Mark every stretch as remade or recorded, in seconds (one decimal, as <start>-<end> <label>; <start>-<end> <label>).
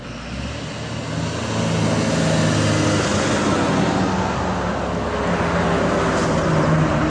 0.0-3.1 recorded; 3.1-4.0 remade; 4.0-7.1 recorded